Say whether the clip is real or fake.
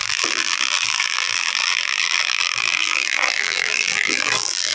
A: fake